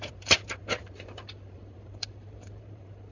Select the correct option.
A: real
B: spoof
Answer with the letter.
B